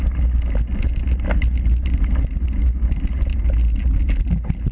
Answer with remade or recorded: recorded